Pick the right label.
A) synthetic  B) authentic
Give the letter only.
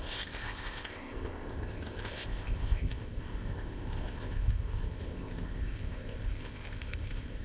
A